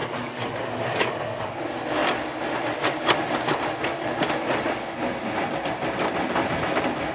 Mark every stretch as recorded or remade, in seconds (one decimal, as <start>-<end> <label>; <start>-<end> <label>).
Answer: 0.0-1.6 remade; 1.6-7.1 recorded